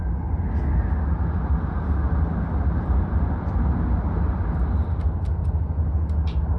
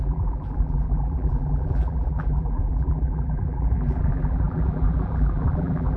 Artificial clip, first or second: second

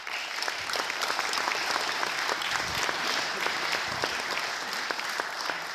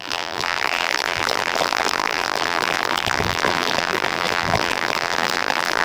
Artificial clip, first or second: second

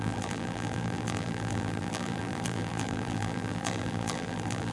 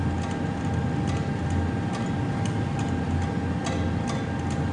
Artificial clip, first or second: first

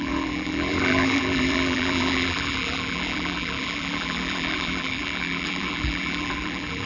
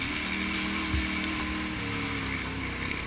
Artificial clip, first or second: first